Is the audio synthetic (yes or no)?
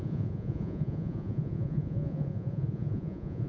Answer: yes